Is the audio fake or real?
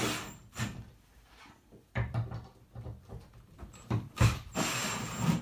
real